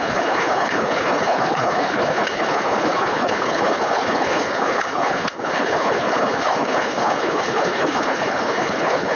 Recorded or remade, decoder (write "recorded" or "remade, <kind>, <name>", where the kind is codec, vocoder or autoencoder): remade, codec, HILCodec